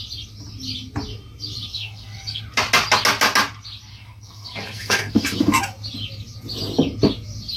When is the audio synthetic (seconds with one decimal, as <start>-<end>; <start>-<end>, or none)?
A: 1.7-2.4; 3.9-5.6